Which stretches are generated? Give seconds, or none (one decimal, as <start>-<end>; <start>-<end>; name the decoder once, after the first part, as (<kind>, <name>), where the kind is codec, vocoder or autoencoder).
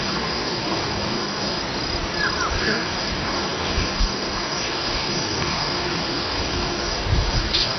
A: 0.0-1.6 (codec, DAC); 2.6-7.8